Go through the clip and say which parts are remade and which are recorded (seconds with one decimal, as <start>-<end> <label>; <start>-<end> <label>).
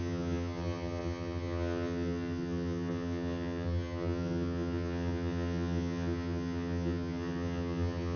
0.0-8.2 remade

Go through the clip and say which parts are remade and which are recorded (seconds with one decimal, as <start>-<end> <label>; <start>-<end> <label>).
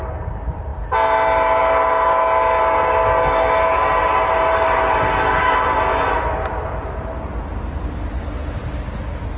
0.0-9.4 recorded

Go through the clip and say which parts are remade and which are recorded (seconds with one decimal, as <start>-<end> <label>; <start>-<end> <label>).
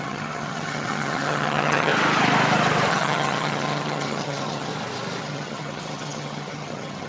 0.0-1.9 remade; 1.9-2.9 recorded; 2.9-4.7 remade; 4.7-5.2 recorded; 5.2-7.1 remade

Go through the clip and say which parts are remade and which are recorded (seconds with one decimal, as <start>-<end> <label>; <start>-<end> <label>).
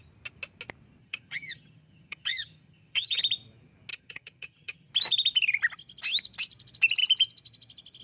0.0-1.0 recorded; 1.0-3.2 remade; 3.2-3.9 recorded; 3.9-4.9 remade; 4.9-8.0 recorded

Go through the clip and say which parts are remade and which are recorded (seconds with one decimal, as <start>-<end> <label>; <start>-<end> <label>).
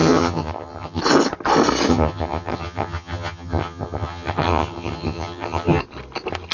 0.0-1.0 remade; 1.0-1.9 recorded; 1.9-5.8 remade; 5.8-6.5 recorded